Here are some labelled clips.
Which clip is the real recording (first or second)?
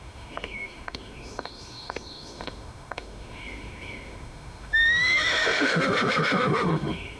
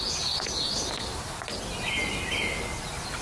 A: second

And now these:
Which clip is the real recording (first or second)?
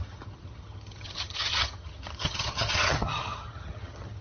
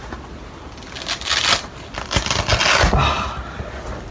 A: second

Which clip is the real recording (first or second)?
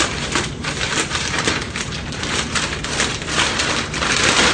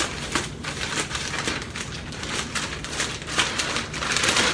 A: second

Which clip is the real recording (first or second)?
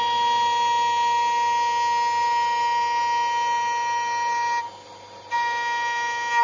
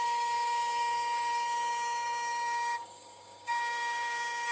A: first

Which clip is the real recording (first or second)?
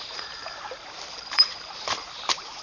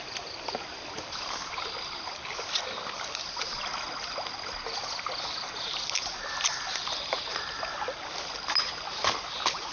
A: second